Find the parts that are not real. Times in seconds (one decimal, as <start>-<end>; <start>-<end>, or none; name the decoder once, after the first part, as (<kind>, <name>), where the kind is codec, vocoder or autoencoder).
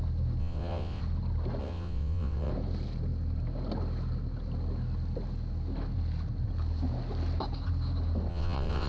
0.4-1.0 (vocoder, WaveNeXt); 1.6-2.5; 8.3-8.9